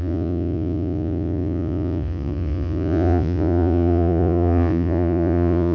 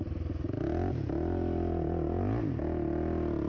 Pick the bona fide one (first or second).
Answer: second